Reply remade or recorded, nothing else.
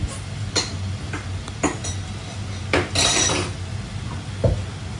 recorded